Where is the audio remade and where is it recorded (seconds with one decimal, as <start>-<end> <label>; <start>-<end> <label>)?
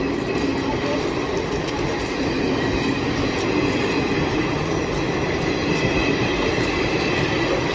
0.0-7.7 recorded